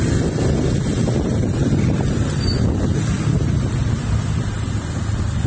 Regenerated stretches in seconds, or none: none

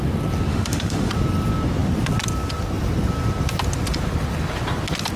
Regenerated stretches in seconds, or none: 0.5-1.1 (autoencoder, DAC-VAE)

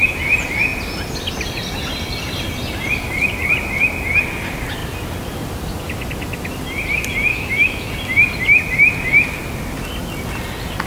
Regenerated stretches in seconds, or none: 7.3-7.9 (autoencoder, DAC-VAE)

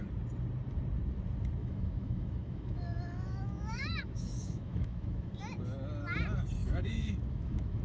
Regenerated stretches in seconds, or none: 1.6-5.4 (autoencoder, DAC-VAE); 6.6-7.8